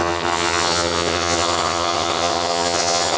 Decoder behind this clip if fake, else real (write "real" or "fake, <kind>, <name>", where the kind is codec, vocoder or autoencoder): fake, vocoder, HiFi-GAN